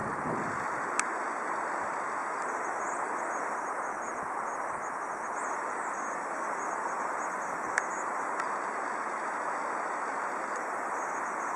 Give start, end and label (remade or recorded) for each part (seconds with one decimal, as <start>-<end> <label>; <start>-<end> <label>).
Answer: 0.0-11.6 recorded